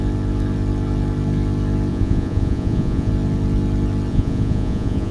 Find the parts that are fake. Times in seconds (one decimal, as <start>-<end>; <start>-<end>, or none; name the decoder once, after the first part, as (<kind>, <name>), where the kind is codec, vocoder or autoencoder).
1.9-3.1 (vocoder, Vocos); 4.1-5.1